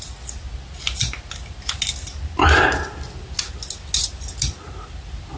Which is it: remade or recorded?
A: recorded